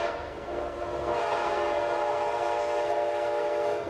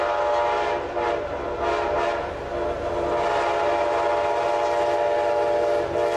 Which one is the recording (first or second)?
second